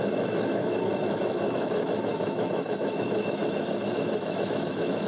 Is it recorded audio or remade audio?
remade